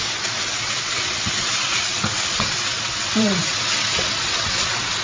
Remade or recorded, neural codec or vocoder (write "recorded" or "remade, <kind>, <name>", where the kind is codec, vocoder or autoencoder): remade, vocoder, WaveNeXt